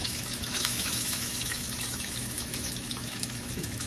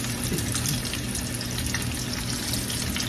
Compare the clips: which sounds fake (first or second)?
first